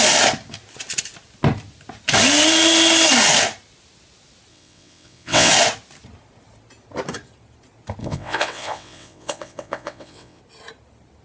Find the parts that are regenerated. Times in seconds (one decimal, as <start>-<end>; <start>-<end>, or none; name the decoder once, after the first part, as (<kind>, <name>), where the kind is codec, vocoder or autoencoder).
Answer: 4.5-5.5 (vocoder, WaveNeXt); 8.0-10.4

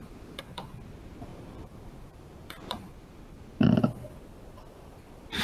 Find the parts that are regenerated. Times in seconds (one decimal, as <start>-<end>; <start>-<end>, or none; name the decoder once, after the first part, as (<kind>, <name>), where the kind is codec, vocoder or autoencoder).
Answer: 1.3-2.9 (vocoder, BigVGAN v2)

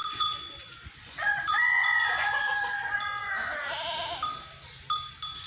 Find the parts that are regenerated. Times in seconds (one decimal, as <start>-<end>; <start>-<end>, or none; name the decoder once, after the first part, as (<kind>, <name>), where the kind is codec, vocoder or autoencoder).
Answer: 0.0-3.3 (vocoder, Vocos)

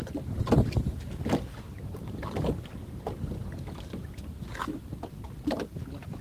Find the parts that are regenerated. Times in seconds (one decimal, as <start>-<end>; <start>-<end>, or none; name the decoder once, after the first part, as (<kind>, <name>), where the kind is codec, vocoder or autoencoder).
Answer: 1.5-2.3 (vocoder, BigVGAN v2); 2.8-4.4

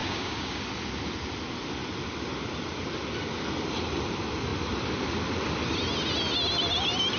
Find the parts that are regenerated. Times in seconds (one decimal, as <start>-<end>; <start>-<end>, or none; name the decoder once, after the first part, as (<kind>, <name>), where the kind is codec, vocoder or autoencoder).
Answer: 0.0-0.6 (codec, DAC)

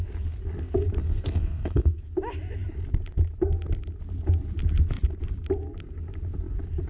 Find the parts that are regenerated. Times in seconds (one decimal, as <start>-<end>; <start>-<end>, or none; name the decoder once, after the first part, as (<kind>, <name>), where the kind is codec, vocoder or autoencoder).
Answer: 1.0-2.0 (codec, SNAC)

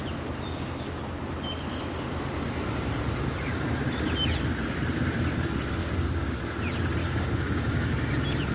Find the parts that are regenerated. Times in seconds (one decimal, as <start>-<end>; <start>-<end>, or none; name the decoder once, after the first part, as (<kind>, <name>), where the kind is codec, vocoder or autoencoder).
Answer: 5.8-6.4 (codec, DAC); 7.0-8.1